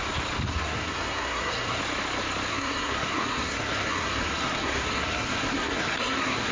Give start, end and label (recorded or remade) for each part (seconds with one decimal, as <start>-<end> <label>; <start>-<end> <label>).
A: 0.0-0.5 recorded; 0.5-1.8 remade; 1.8-2.5 recorded; 2.5-6.5 remade